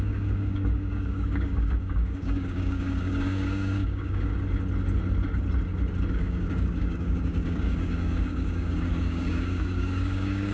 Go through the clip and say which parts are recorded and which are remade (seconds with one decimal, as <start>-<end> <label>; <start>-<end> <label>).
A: 0.0-4.3 remade; 4.3-6.1 recorded; 6.1-10.5 remade